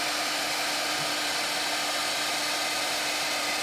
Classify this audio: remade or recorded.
recorded